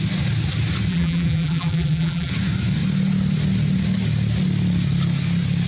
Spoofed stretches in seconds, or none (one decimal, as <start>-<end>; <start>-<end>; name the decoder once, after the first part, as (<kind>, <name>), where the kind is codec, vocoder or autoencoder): 0.9-2.3 (vocoder, BigVGAN v2)